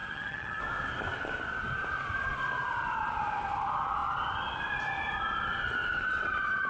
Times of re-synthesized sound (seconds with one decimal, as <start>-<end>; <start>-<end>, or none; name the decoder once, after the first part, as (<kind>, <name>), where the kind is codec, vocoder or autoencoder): 0.0-0.6 (vocoder, HiFi-GAN)